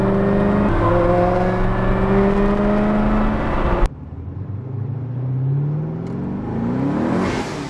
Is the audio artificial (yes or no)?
no